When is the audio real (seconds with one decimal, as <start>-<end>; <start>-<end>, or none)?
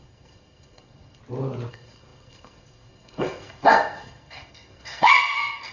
1.2-1.7